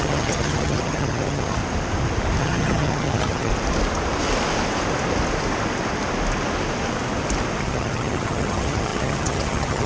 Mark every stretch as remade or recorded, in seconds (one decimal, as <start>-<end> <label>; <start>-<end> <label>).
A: 0.0-1.6 remade; 1.6-2.4 recorded; 2.4-3.5 remade; 3.5-7.6 recorded; 7.6-9.9 remade